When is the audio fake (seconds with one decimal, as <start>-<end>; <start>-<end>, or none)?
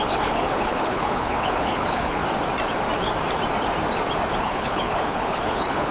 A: 0.0-2.2; 4.4-5.9